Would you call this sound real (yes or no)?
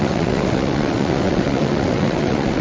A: no